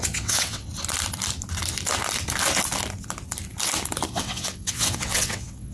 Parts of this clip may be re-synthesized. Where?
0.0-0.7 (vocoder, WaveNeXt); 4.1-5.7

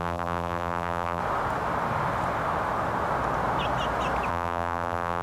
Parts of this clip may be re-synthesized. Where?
0.0-1.2 (vocoder, BigVGAN v2); 4.3-5.2

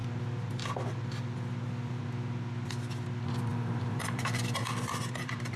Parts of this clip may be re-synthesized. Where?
3.5-5.6 (vocoder, BigVGAN v2)

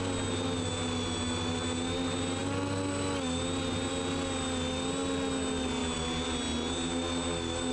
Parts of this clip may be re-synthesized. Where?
none

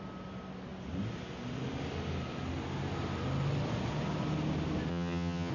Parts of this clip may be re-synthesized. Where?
4.9-5.5 (vocoder, HiFi-GAN)